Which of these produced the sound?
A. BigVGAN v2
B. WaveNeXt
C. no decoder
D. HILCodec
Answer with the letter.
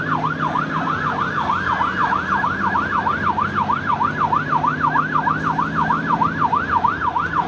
C